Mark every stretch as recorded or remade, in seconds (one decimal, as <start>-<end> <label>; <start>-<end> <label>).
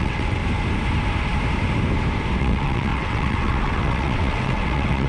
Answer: 0.0-0.4 remade; 0.4-2.4 recorded; 2.4-5.1 remade